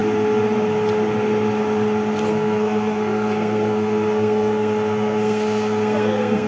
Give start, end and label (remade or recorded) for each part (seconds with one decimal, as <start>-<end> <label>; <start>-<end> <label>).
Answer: 0.0-2.3 recorded; 2.3-6.5 remade